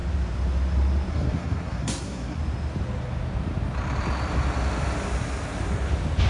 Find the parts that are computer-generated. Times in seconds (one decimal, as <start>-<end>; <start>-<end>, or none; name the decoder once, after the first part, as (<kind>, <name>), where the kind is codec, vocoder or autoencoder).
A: 1.1-2.4 (codec, SNAC)